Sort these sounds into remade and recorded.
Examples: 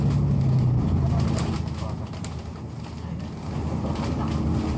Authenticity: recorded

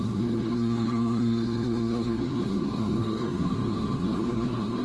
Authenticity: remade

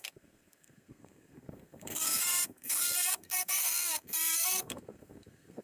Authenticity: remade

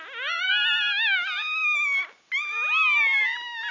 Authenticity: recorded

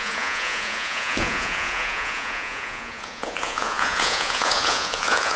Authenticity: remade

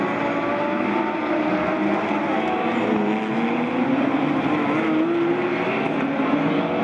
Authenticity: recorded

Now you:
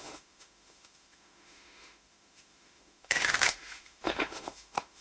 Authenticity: remade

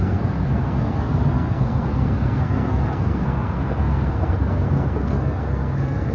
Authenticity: remade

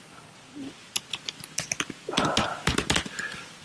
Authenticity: recorded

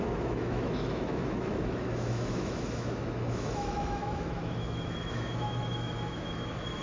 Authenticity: remade